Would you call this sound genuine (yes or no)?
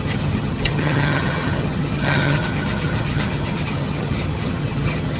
no